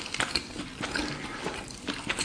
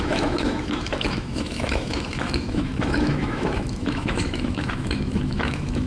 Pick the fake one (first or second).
second